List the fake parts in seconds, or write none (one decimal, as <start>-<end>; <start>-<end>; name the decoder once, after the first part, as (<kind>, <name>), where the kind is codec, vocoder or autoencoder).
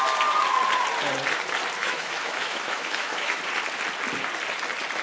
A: 1.8-3.4 (autoencoder, DAC-VAE)